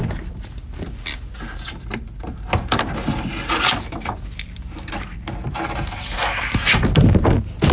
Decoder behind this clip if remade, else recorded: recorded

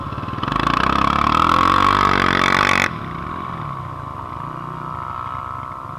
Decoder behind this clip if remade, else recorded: recorded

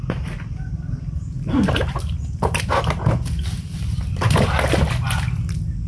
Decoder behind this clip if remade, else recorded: recorded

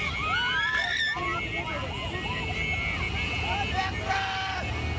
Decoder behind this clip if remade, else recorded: recorded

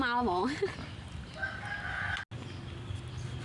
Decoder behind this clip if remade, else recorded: recorded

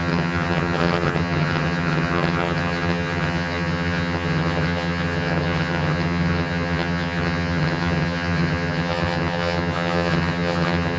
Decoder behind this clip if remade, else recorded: remade, vocoder, HiFi-GAN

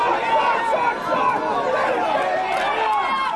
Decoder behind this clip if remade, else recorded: recorded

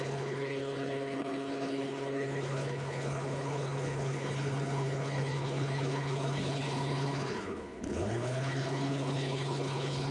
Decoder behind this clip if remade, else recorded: remade, codec, HILCodec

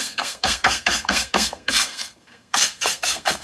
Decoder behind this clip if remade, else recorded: remade, codec, SNAC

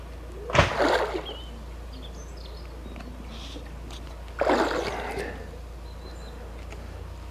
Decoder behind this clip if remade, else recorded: recorded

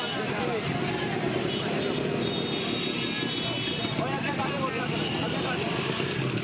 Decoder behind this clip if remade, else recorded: recorded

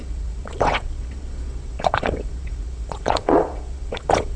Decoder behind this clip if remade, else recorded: remade, vocoder, Vocos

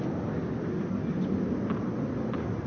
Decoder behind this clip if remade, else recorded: recorded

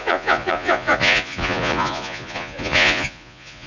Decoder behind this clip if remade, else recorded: remade, vocoder, Vocos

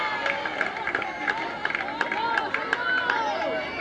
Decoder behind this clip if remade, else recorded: recorded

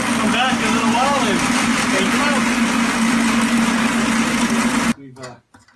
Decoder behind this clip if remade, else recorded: recorded